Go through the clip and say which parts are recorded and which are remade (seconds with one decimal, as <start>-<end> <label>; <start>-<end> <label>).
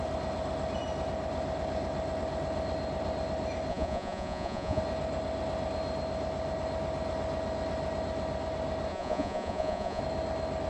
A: 0.0-3.7 recorded; 3.7-4.8 remade; 4.8-8.9 recorded; 8.9-10.0 remade; 10.0-10.7 recorded